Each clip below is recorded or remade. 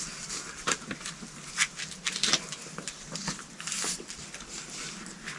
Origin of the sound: recorded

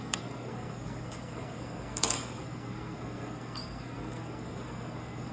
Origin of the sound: remade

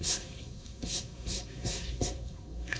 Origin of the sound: remade